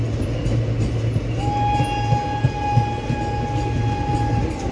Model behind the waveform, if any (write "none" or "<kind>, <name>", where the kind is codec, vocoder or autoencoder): none